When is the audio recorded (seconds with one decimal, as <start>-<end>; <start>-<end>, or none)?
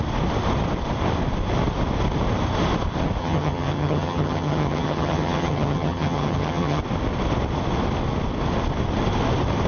0.0-3.2; 6.8-9.7